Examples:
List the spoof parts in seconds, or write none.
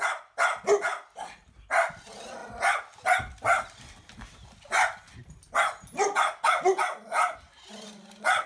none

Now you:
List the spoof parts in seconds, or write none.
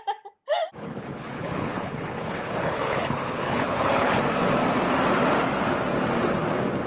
0.8-4.2 (codec, HILCodec)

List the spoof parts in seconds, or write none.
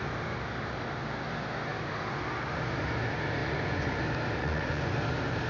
3.4-4.0 (vocoder, Vocos); 4.4-4.9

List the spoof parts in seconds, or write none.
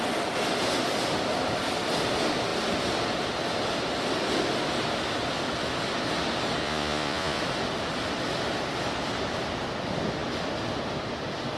6.6-7.4 (vocoder, Vocos)